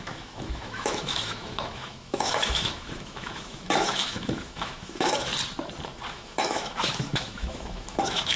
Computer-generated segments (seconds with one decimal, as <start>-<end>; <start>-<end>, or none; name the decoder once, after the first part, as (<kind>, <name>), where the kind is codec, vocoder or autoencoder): 0.0-5.3 (autoencoder, DAC-VAE); 6.1-8.4